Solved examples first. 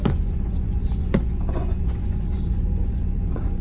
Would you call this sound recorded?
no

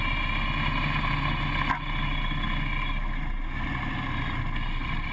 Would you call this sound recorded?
yes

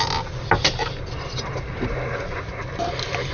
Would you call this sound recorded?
yes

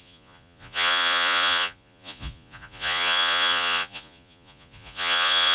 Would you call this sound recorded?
no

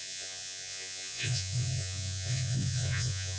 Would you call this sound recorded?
no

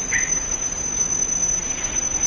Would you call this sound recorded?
yes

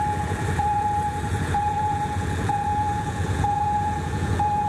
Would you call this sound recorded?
no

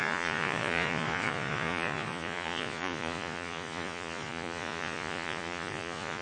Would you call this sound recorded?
no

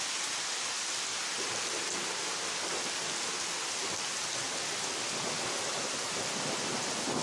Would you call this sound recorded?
yes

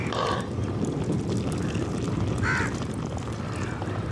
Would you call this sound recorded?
yes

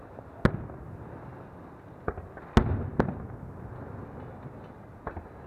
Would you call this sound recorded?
yes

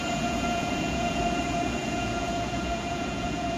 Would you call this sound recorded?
no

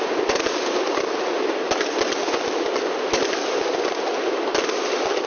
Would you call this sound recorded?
yes